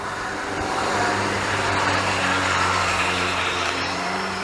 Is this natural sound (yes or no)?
no